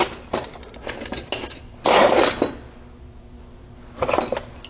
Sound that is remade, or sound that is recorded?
recorded